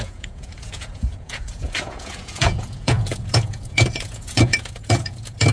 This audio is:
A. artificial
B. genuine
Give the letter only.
A